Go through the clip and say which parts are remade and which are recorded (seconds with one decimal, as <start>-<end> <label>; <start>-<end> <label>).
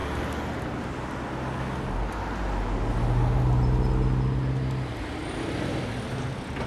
0.0-6.7 recorded